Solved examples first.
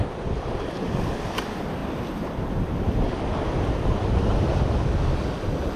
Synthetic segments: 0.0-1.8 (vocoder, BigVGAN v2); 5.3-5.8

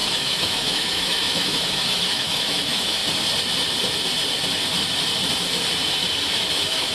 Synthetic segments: 0.0-3.0 (autoencoder, DAC-VAE); 6.5-6.9

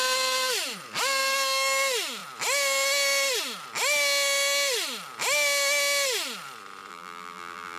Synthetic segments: 6.9-7.8 (vocoder, BigVGAN v2)

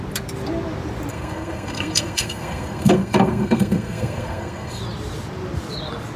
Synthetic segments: 1.1-4.8 (codec, SNAC)